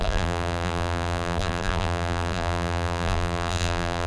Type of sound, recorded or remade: remade